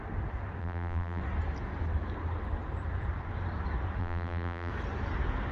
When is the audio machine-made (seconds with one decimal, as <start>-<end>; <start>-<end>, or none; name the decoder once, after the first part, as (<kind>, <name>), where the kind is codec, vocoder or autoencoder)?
0.6-1.2 (vocoder, BigVGAN v2); 4.0-4.7